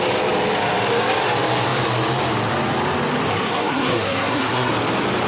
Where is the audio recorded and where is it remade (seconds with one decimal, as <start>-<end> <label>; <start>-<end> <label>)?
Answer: 0.0-3.3 recorded; 3.3-4.7 remade; 4.7-5.3 recorded